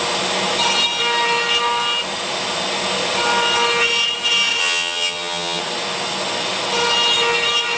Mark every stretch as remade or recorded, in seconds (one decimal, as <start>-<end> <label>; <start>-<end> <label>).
0.0-4.6 recorded; 4.6-5.6 remade; 5.6-7.8 recorded